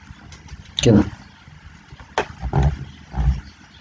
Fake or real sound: real